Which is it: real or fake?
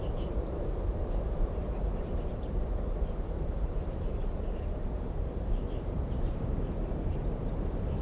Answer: fake